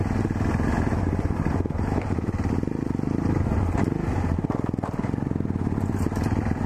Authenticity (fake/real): real